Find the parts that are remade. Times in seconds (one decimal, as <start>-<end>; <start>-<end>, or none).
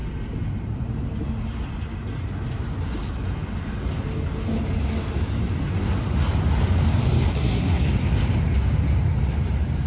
7.3-7.8